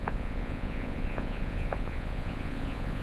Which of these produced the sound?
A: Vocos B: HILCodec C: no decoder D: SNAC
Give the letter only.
A